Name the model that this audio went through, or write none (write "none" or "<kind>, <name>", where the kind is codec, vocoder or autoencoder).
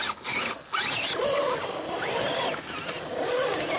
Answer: none